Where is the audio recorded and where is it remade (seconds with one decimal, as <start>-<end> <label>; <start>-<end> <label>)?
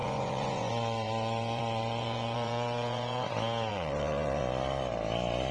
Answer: 0.0-3.3 remade; 3.3-3.7 recorded; 3.7-4.4 remade; 4.4-5.5 recorded